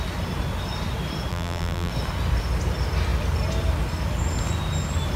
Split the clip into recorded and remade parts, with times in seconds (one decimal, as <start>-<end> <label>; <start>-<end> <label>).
0.0-1.3 recorded; 1.3-1.9 remade; 1.9-5.2 recorded